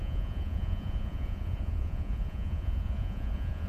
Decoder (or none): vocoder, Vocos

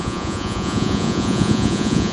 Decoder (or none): vocoder, Vocos